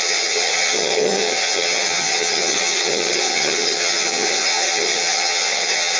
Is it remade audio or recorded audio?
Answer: remade